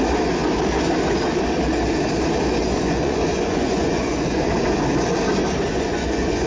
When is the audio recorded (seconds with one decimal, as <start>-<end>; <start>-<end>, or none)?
0.0-2.6; 4.5-5.7